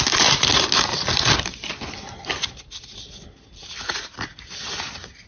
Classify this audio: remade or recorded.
recorded